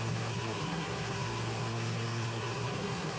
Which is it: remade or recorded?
remade